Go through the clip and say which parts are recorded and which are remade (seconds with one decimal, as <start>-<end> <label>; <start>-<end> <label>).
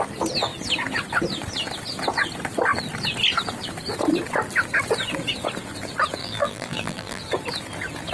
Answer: 0.0-6.2 recorded; 6.2-7.2 remade; 7.2-8.1 recorded